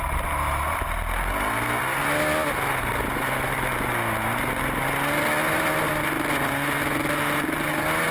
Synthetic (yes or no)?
no